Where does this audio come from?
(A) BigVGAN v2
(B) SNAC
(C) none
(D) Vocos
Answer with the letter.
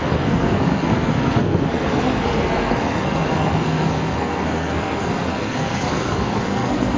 B